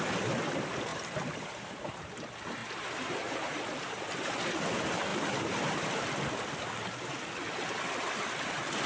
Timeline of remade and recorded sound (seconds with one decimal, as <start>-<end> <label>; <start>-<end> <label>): 0.0-0.9 recorded; 0.9-2.2 remade; 2.2-2.6 recorded; 2.6-4.3 remade; 4.3-5.1 recorded; 5.1-5.8 remade; 5.8-8.9 recorded

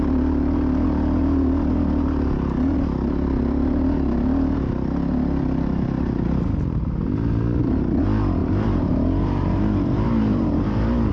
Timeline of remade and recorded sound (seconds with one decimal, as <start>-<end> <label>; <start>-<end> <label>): 0.0-8.4 recorded; 8.4-11.1 remade

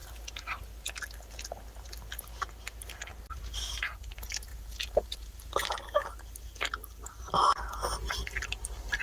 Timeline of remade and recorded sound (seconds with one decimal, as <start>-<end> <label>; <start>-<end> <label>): 0.0-0.6 remade; 0.6-3.1 recorded; 3.1-4.1 remade; 4.1-4.5 recorded; 4.5-5.3 remade; 5.3-9.0 recorded

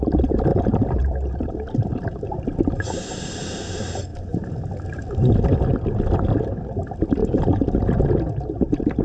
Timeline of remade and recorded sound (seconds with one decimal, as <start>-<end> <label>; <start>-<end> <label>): 0.0-0.5 recorded; 0.5-2.4 remade; 2.4-4.1 recorded; 4.1-4.6 remade; 4.6-7.2 recorded; 7.2-7.7 remade; 7.7-9.0 recorded

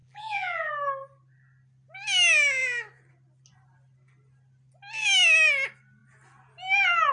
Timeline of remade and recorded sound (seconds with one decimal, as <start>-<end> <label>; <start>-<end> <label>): 0.0-0.7 remade; 0.7-7.1 recorded